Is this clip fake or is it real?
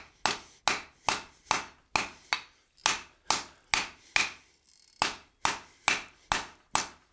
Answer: real